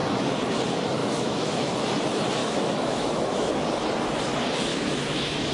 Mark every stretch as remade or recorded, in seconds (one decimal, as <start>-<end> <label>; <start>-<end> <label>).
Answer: 0.0-1.0 recorded; 1.0-1.7 remade; 1.7-2.4 recorded; 2.4-3.5 remade; 3.5-4.7 recorded; 4.7-5.5 remade